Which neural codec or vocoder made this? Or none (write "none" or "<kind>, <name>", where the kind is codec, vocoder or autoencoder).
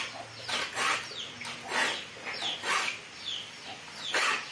none